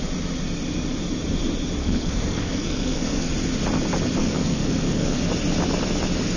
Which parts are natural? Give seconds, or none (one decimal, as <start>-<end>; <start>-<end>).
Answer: 0.0-1.8; 3.3-4.2; 5.2-6.4